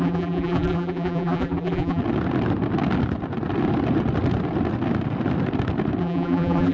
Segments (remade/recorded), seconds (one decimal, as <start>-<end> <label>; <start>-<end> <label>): 0.0-2.0 remade; 2.0-6.0 recorded; 6.0-6.7 remade